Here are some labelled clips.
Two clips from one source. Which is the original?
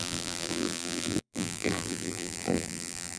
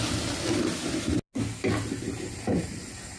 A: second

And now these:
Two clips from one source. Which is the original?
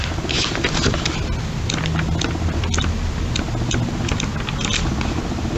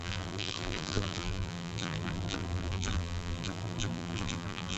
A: first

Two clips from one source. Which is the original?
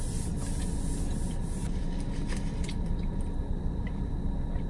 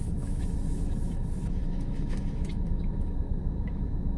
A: first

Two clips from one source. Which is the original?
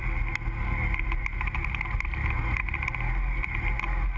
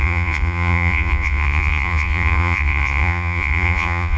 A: first